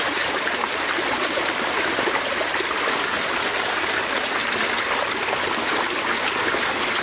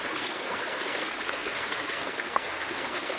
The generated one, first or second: second